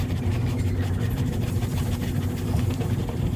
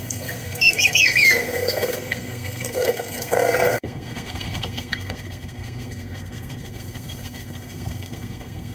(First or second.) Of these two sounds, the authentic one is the first